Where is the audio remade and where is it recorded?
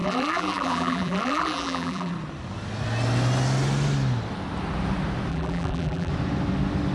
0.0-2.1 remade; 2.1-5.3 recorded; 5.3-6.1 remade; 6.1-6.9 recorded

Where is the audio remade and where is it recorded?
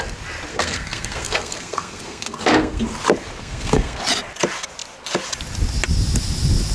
0.0-0.5 recorded; 0.5-2.8 remade; 2.8-3.4 recorded; 3.4-4.0 remade; 4.0-6.7 recorded